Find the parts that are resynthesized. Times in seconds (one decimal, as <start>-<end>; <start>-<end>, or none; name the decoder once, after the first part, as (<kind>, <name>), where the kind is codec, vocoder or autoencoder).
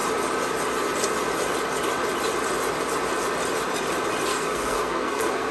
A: 4.3-5.5 (codec, SNAC)